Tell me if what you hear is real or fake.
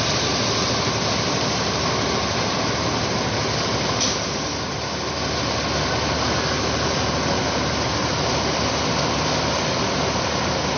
real